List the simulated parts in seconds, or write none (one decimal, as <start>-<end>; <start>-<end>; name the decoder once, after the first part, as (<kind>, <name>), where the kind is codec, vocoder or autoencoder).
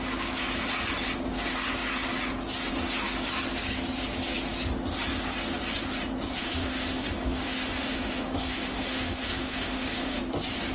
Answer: 6.4-10.2 (autoencoder, DAC-VAE)